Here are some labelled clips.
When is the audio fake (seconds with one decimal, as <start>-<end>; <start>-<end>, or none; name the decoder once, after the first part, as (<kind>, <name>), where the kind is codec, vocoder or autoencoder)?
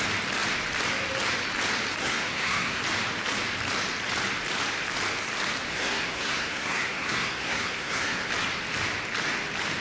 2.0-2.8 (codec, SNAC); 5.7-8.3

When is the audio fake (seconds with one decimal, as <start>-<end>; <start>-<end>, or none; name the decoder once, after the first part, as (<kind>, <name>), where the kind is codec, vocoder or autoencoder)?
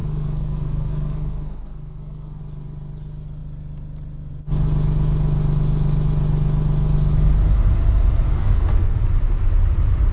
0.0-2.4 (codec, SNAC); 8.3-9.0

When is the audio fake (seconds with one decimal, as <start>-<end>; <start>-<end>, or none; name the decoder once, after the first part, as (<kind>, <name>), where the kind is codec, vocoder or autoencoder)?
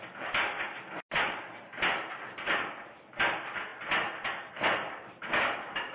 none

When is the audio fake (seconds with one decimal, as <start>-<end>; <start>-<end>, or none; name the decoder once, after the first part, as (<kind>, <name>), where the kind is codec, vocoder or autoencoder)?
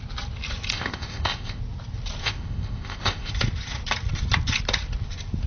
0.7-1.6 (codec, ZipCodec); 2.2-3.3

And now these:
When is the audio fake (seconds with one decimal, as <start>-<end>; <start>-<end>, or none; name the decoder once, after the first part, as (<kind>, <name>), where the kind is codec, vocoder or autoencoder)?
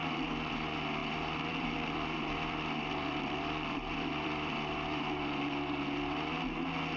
0.0-0.5 (vocoder, BigVGAN v2); 1.0-5.2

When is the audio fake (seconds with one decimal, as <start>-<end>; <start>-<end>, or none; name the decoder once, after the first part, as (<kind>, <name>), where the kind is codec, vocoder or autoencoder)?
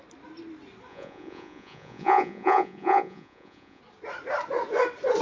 0.9-3.8 (vocoder, Vocos)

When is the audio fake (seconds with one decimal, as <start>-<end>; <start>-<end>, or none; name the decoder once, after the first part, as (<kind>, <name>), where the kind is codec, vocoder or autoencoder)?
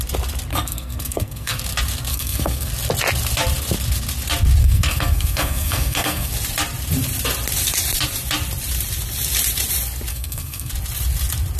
0.5-1.6 (codec, SNAC); 2.1-2.7; 4.6-6.3; 10.1-10.7